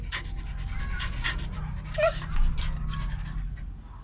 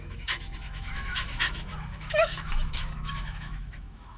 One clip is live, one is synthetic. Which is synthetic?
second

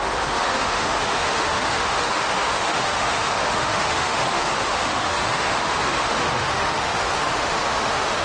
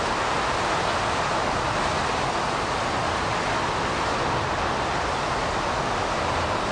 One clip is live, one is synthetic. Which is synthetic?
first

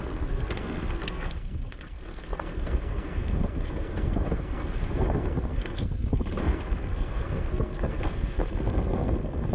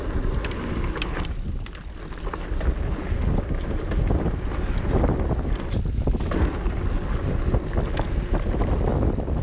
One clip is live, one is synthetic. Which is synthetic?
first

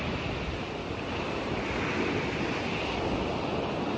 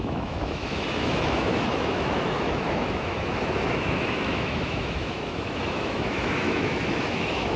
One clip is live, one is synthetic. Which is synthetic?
second